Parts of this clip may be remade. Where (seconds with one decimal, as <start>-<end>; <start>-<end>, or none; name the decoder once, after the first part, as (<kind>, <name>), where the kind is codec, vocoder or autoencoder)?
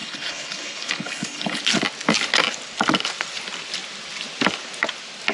0.0-1.6 (codec, HILCodec)